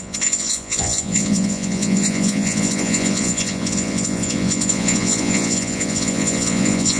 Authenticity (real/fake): fake